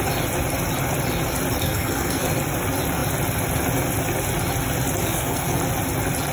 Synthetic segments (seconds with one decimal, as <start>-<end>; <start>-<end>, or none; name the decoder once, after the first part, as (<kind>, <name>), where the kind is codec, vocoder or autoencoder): 1.6-2.3 (codec, SNAC); 5.0-5.6